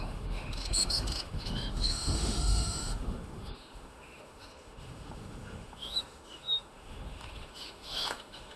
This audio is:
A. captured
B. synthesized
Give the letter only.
B